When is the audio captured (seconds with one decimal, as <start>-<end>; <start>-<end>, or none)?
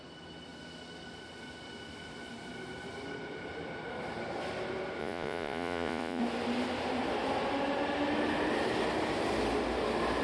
0.0-5.0; 6.2-10.2